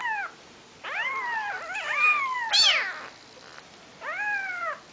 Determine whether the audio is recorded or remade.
recorded